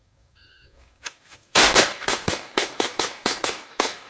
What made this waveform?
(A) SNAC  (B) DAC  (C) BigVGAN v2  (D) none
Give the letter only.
B